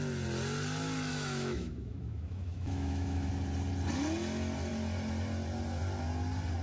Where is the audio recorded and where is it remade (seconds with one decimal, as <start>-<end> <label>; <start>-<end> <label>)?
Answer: 0.0-1.1 recorded; 1.1-3.3 remade; 3.3-6.6 recorded